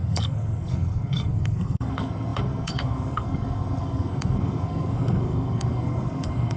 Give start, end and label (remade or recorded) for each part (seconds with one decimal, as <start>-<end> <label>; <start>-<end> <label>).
0.0-6.6 remade